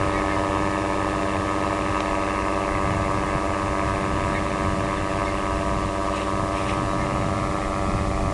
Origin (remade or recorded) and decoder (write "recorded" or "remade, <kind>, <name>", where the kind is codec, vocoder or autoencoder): recorded